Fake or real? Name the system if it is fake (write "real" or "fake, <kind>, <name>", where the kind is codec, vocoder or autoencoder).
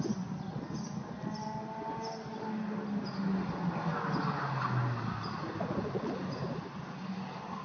real